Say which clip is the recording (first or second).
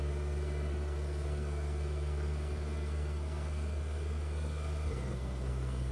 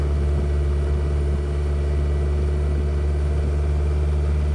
second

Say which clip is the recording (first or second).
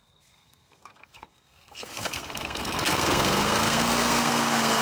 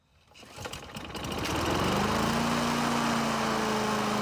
second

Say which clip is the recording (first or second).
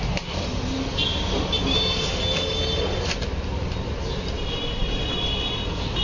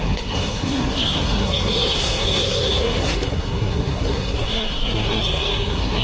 first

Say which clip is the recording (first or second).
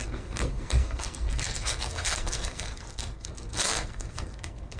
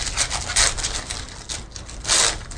second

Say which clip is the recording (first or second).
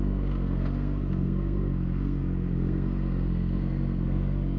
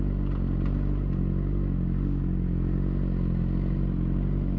second